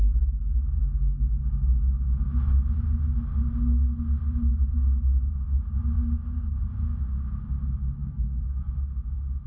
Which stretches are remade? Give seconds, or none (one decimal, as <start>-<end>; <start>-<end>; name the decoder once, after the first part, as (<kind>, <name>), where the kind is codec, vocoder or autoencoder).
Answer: 8.0-8.7 (codec, SNAC)